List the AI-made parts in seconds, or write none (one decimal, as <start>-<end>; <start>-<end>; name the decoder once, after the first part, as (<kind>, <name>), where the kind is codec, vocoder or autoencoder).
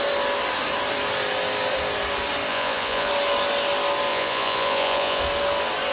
2.5-3.1 (vocoder, Vocos); 4.1-5.2